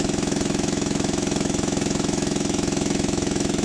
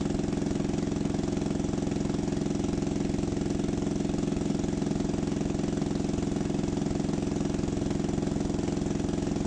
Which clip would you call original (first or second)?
second